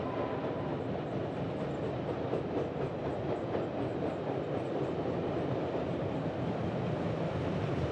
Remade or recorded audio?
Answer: recorded